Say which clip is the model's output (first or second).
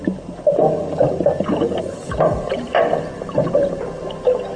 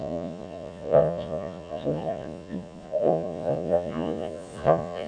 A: second